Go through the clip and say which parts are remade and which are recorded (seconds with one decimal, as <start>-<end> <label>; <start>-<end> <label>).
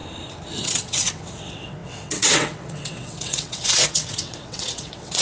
0.0-0.6 recorded; 0.6-5.2 remade